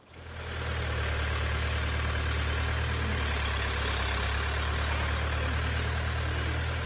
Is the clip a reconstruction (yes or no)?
no